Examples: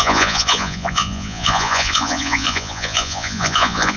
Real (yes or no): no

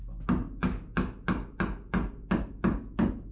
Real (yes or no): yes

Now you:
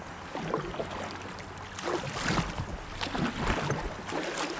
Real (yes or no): yes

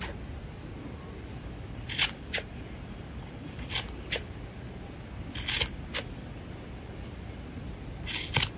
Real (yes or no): yes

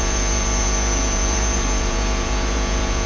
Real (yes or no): no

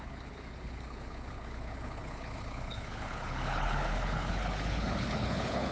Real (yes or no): no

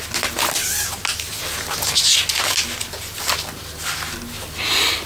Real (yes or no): yes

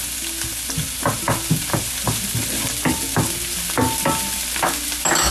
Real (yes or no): yes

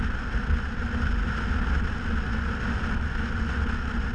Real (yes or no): yes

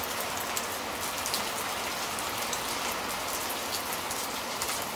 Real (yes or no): yes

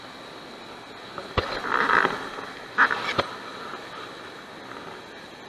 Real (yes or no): yes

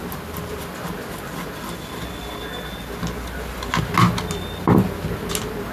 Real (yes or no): yes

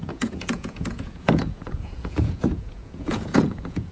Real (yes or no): no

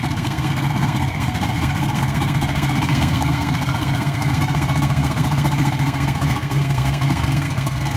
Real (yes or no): no